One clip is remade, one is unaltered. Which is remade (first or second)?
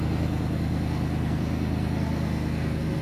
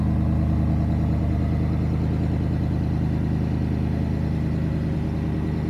first